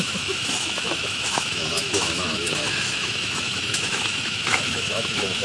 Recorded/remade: remade